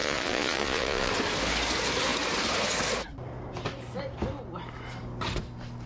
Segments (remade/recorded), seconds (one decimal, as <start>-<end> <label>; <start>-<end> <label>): 0.0-1.1 remade; 1.1-5.9 recorded